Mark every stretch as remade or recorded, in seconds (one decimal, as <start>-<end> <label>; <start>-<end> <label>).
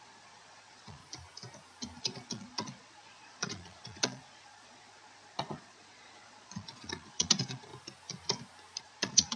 0.0-1.0 remade; 1.0-2.0 recorded; 2.0-7.7 remade; 7.7-8.8 recorded; 8.8-9.4 remade